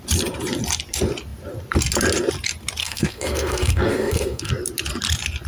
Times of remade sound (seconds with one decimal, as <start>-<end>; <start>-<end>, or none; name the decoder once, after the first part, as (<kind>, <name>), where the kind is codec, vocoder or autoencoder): 2.8-4.5 (codec, SNAC)